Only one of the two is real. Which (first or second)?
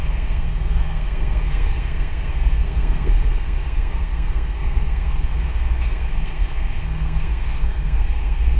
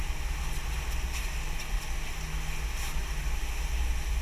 second